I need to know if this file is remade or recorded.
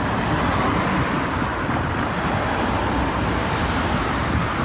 recorded